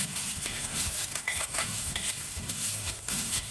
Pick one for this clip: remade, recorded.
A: remade